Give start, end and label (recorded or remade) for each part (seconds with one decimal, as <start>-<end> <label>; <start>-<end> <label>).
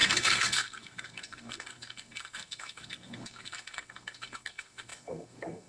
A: 0.0-5.7 remade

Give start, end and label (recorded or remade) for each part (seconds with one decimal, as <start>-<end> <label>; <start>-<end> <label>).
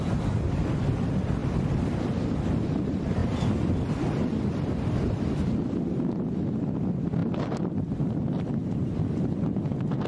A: 0.0-10.1 recorded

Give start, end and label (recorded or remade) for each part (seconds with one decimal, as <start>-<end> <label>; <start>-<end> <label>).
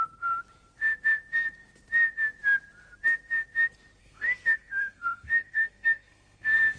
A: 0.0-4.0 recorded; 4.0-6.8 remade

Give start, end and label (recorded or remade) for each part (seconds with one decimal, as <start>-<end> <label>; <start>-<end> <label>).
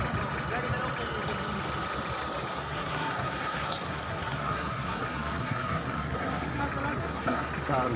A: 0.0-2.5 recorded; 2.5-6.6 remade; 6.6-7.0 recorded; 7.0-7.5 remade; 7.5-8.0 recorded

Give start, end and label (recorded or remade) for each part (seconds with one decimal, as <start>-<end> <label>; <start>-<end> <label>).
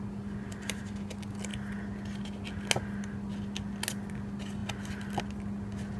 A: 0.0-6.0 recorded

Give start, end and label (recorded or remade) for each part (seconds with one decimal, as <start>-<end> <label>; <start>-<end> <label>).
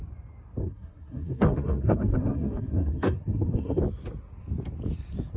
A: 0.0-0.6 recorded; 0.6-3.8 remade; 3.8-5.4 recorded